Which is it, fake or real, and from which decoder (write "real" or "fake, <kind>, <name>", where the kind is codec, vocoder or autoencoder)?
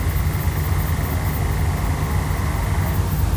real